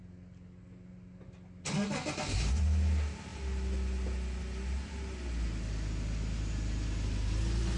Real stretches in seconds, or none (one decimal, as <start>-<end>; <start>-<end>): 0.0-7.8